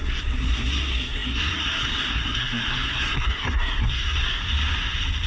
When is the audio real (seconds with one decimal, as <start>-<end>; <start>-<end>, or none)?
4.4-5.3